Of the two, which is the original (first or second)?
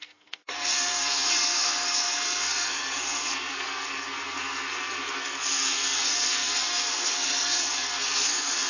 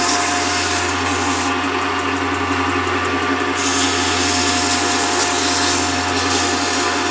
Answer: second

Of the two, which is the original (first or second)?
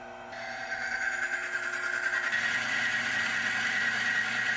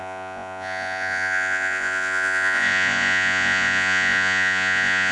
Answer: first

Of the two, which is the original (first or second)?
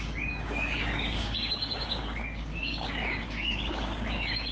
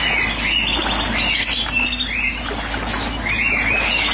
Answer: second